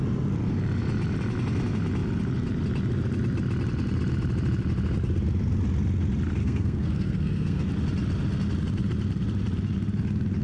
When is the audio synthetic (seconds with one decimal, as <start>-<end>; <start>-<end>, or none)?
6.4-7.7